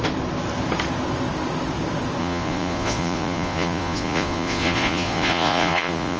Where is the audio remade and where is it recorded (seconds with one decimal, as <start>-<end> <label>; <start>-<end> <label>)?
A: 0.0-2.2 recorded; 2.2-6.2 remade